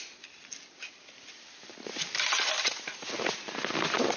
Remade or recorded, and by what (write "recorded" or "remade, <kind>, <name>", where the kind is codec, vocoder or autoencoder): recorded